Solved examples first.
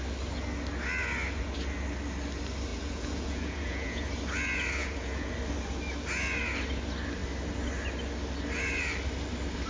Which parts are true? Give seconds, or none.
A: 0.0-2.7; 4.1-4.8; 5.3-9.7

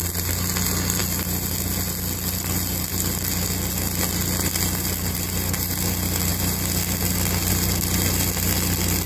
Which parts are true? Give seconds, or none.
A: 0.0-9.1

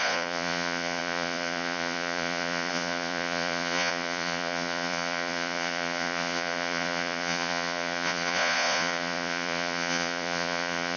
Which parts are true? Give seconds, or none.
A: none

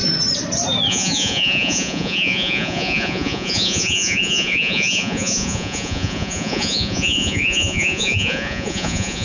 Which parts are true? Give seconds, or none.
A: 0.0-0.9